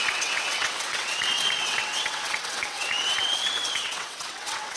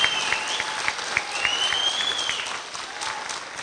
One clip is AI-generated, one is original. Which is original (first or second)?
second